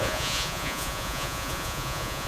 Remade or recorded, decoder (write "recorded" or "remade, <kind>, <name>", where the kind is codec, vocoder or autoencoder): remade, vocoder, Vocos